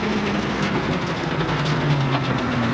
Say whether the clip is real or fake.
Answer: fake